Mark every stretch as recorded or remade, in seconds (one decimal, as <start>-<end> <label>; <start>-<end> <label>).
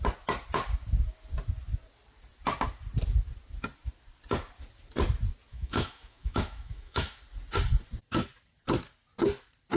0.0-5.5 recorded; 5.5-7.2 remade; 7.2-9.8 recorded